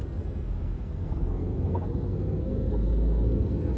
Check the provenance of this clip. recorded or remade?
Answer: remade